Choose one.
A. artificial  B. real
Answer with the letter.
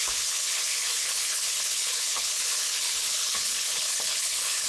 A